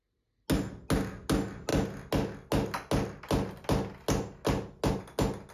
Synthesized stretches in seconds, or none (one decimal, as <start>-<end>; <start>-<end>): none